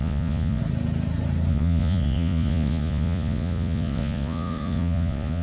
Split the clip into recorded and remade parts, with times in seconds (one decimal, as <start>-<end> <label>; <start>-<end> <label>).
0.0-0.6 remade; 0.6-1.5 recorded; 1.5-5.4 remade